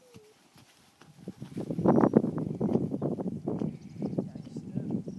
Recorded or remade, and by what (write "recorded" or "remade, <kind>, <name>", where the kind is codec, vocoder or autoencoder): recorded